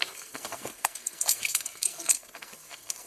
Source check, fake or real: fake